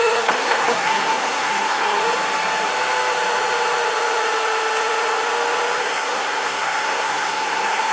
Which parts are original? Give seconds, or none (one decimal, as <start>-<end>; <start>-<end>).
2.0-5.8